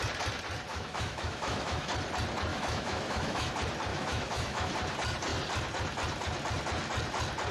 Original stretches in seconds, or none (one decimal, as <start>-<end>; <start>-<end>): 0.0-0.7; 1.9-2.5; 3.5-3.9; 4.7-7.5